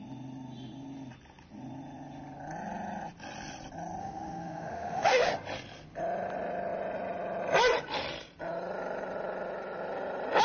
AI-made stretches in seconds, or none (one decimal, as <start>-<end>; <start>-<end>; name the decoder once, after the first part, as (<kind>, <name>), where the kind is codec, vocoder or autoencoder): 4.0-5.3 (autoencoder, DAC-VAE)